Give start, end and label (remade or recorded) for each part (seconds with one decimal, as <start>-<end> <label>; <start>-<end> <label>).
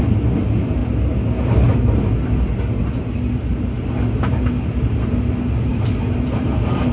0.0-5.7 recorded; 5.7-6.9 remade